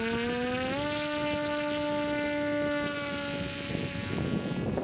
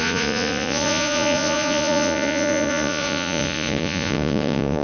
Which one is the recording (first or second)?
first